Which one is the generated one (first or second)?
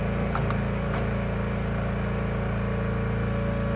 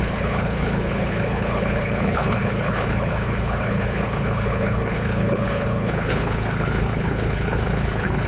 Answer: second